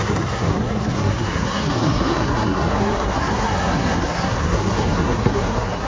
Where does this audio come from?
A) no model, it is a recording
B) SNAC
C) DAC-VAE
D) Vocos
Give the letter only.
B